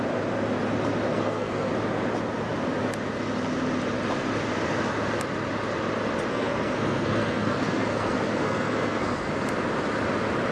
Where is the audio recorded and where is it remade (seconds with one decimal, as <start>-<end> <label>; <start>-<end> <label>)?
0.0-1.1 recorded; 1.1-1.7 remade; 1.7-6.3 recorded; 6.3-9.3 remade; 9.3-10.5 recorded